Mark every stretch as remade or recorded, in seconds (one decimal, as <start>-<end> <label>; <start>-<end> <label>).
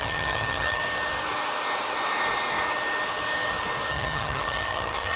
0.0-0.8 remade; 0.8-3.9 recorded; 3.9-5.2 remade